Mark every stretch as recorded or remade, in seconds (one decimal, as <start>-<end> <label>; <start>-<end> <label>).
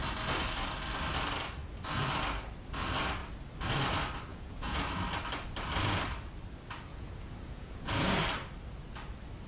0.0-4.3 recorded; 4.3-4.9 remade; 4.9-6.9 recorded; 6.9-8.2 remade; 8.2-9.5 recorded